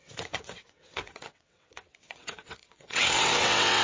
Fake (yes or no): yes